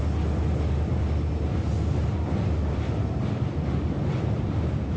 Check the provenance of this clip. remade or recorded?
recorded